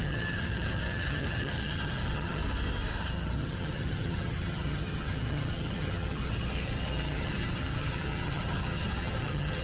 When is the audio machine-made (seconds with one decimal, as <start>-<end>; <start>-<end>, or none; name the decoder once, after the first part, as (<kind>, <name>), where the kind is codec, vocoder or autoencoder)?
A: 0.0-2.4 (vocoder, HiFi-GAN); 3.0-9.6

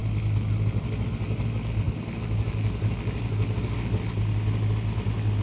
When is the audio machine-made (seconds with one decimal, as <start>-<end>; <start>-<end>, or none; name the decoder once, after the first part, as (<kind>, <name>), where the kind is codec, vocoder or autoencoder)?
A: none

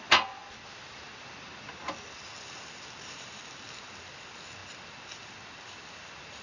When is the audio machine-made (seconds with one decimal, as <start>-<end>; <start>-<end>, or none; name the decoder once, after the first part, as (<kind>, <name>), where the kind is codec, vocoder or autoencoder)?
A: none

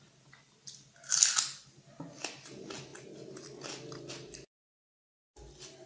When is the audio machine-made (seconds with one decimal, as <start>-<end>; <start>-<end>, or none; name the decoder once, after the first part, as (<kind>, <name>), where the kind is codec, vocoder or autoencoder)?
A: none

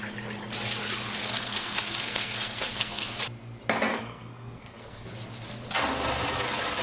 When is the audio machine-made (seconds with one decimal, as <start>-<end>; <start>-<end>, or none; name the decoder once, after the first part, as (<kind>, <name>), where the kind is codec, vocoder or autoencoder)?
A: 1.2-3.2 (codec, SNAC); 3.9-5.1

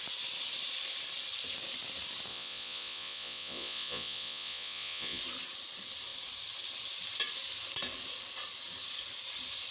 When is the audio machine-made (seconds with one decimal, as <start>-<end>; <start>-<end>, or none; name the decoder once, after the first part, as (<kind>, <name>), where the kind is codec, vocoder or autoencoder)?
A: 2.3-5.2 (vocoder, Vocos)